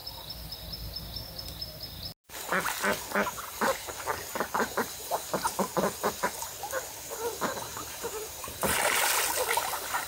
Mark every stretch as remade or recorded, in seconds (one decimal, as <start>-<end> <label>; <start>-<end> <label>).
0.0-7.7 recorded; 7.7-8.8 remade; 8.8-10.1 recorded